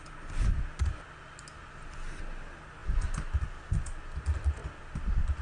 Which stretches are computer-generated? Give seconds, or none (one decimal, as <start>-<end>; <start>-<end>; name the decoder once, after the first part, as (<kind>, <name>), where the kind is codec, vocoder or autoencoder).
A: none